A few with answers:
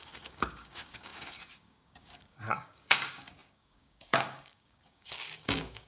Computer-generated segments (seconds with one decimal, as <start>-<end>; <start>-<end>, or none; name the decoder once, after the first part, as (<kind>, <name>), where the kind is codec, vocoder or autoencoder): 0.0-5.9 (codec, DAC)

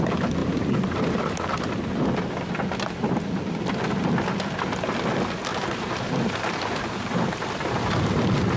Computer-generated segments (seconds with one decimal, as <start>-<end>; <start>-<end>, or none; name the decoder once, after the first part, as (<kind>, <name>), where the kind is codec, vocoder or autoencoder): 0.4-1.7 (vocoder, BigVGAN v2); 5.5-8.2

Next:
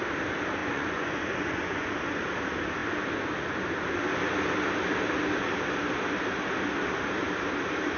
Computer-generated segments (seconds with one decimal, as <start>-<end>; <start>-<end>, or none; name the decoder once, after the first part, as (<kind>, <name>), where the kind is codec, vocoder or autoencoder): 0.6-1.9 (vocoder, Vocos)

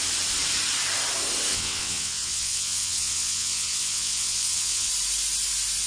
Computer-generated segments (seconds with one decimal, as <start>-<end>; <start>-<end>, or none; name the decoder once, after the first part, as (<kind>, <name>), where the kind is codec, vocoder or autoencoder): 1.5-4.9 (vocoder, WaveNeXt)

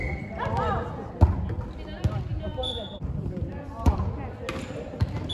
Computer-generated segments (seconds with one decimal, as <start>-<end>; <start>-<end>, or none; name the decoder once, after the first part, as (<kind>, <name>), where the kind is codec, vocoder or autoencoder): 0.0-1.1 (vocoder, BigVGAN v2); 2.5-4.3

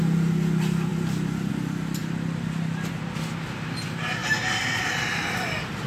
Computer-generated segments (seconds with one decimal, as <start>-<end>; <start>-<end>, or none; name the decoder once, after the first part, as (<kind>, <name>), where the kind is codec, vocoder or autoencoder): 4.2-5.9 (vocoder, BigVGAN v2)

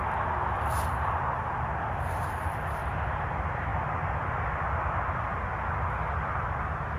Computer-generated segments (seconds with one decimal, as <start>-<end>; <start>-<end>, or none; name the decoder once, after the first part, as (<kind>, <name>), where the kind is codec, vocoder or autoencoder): none